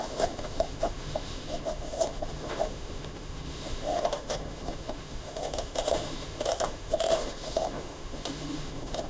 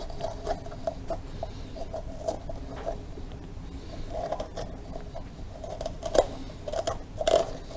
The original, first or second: second